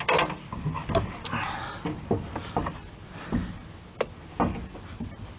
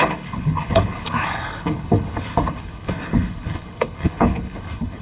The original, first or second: first